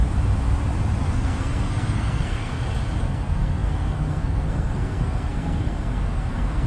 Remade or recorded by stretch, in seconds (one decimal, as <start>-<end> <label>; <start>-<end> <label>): 0.0-1.0 recorded; 1.0-2.5 remade; 2.5-3.0 recorded; 3.0-6.7 remade